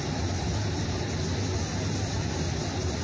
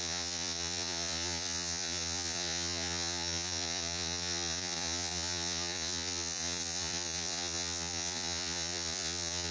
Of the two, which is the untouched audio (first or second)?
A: first